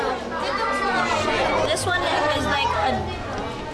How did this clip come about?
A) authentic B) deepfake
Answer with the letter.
A